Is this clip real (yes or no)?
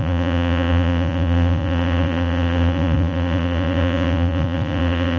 no